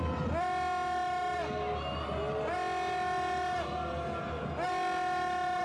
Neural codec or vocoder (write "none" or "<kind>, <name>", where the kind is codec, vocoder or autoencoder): none